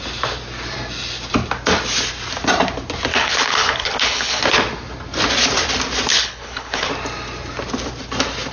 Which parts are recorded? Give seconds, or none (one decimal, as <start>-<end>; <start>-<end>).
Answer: 0.0-3.1; 4.4-6.1; 6.9-8.5